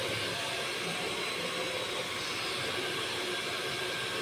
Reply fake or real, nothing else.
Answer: real